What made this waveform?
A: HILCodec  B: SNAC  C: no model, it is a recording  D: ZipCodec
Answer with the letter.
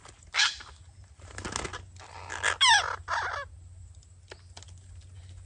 C